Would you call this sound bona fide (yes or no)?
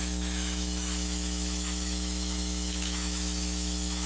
no